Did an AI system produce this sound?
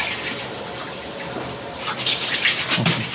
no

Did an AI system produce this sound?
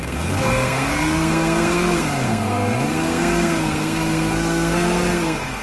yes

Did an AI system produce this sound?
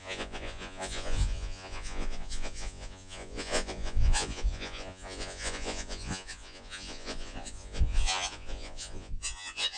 yes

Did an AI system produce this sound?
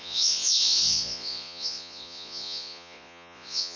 yes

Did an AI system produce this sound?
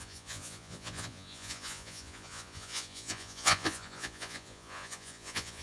yes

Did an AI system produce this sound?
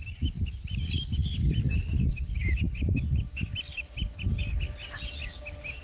no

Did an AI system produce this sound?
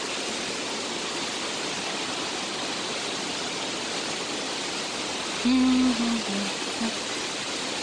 no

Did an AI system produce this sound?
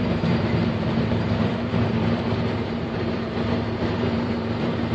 yes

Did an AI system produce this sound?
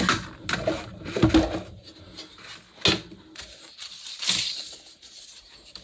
no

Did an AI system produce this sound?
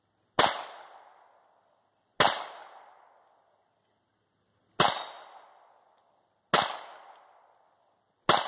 no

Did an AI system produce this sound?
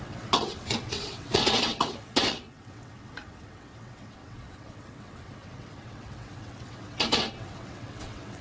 yes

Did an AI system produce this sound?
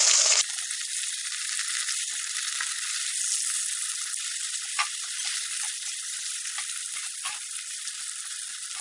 no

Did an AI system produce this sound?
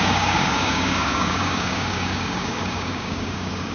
yes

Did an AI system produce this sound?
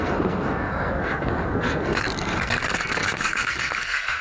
yes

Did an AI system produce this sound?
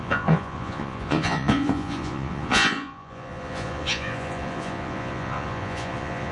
yes